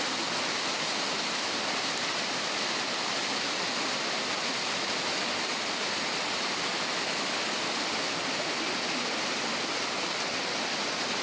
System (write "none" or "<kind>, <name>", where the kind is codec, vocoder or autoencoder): none